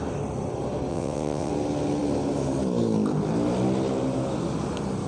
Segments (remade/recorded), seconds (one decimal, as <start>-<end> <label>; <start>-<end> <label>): 0.0-0.9 recorded; 0.9-1.5 remade; 1.5-5.1 recorded